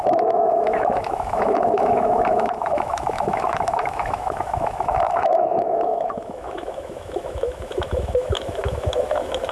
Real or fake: fake